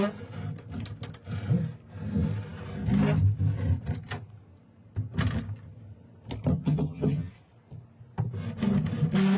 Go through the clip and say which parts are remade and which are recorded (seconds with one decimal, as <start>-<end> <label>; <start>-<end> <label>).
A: 0.0-6.5 recorded; 6.5-7.3 remade; 7.3-9.4 recorded